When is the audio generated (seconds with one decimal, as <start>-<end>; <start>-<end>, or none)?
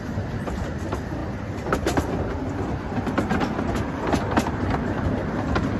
none